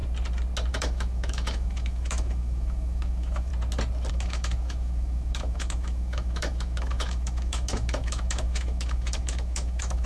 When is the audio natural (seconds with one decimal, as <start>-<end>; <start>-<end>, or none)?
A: 0.0-0.7; 3.5-4.1